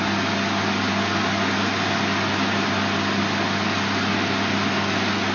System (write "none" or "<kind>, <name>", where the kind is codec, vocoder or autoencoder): none